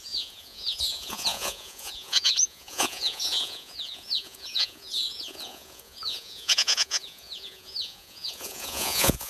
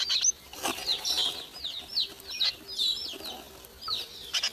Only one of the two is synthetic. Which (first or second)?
first